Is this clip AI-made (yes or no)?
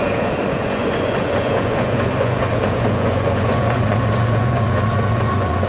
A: yes